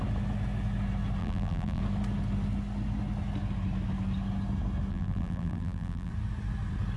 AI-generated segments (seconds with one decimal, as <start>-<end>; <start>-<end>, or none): 1.2-1.8; 4.9-6.1